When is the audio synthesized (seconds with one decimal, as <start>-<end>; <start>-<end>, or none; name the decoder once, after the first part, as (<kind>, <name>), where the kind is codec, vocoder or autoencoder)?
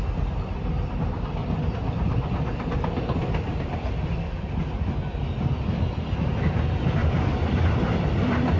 1.4-4.1 (vocoder, BigVGAN v2); 7.0-8.6